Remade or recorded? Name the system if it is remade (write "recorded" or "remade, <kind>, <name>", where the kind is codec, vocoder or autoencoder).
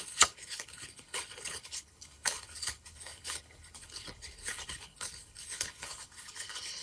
remade, codec, HILCodec